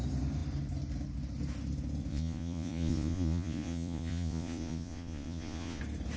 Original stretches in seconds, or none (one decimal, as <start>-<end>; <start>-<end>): 0.0-2.1; 5.8-6.2